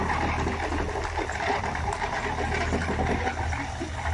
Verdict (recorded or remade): recorded